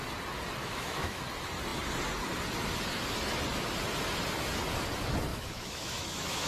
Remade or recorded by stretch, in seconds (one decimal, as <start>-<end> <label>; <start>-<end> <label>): 0.0-0.6 recorded; 0.6-1.2 remade; 1.2-5.3 recorded; 5.3-6.5 remade